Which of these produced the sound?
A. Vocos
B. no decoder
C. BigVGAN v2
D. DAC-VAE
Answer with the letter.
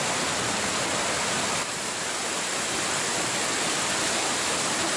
B